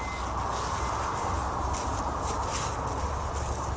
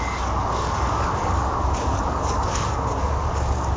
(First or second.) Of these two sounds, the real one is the first